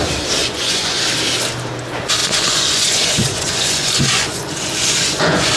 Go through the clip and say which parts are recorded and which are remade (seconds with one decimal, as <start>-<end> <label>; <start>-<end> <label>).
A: 0.0-0.4 recorded; 0.4-1.0 remade; 1.0-2.2 recorded; 2.2-5.6 remade